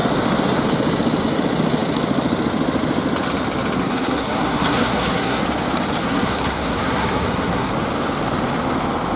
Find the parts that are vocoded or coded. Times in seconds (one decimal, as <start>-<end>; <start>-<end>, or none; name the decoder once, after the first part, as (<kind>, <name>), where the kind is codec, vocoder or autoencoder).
3.8-5.4 (codec, SNAC); 6.0-7.7